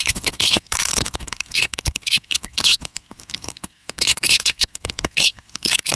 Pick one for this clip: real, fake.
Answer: fake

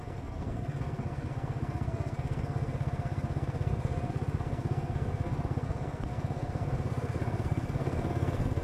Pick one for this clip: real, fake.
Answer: fake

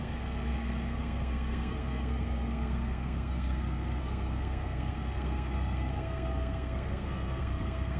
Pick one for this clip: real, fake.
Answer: fake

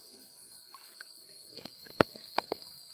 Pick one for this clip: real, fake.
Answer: fake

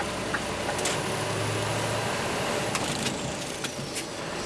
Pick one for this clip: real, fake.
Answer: real